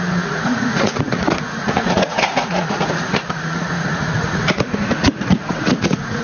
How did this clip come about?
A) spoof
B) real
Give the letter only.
A